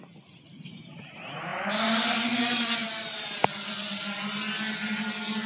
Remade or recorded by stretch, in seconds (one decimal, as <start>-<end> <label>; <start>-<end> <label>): 0.0-1.5 recorded; 1.5-2.4 remade; 2.4-2.8 recorded; 2.8-4.4 remade; 4.4-5.5 recorded